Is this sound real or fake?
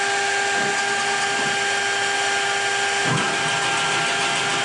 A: real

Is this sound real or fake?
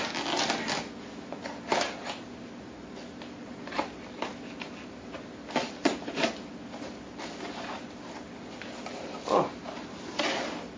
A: real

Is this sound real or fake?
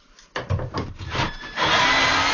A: real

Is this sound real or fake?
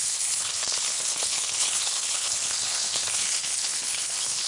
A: fake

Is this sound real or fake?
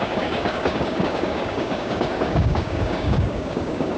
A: fake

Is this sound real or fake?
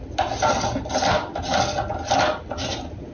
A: real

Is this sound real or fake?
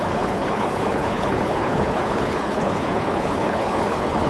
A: fake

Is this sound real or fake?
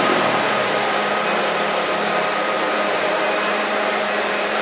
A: fake